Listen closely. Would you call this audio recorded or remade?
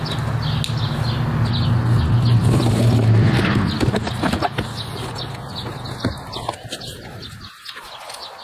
recorded